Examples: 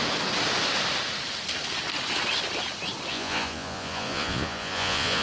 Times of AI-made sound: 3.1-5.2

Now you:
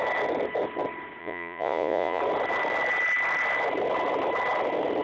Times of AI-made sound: 1.2-2.2

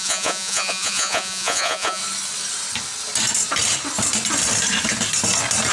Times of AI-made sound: 0.0-2.0